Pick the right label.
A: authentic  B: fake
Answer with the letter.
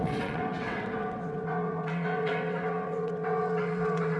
B